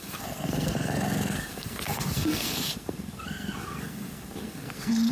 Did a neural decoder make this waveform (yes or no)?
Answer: yes